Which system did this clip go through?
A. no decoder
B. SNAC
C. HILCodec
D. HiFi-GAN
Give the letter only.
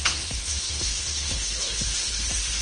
C